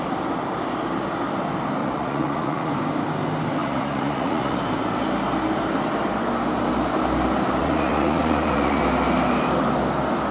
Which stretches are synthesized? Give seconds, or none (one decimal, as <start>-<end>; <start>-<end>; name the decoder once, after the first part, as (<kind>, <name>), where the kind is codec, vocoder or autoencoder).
1.8-2.7 (vocoder, Vocos); 3.6-4.6; 7.6-8.8